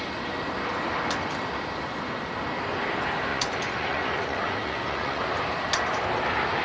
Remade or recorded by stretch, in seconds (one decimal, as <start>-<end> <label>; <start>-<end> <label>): 0.0-3.3 recorded; 3.3-5.2 remade; 5.2-6.6 recorded